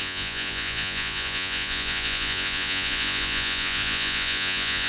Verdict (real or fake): fake